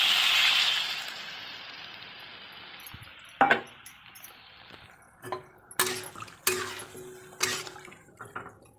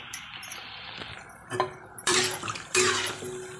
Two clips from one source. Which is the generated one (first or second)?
second